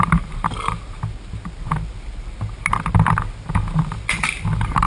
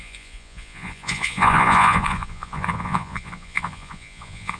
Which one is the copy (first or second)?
second